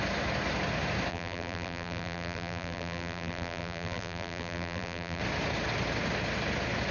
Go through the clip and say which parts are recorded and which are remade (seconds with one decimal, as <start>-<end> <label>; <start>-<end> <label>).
0.0-1.1 recorded; 1.1-5.2 remade; 5.2-6.9 recorded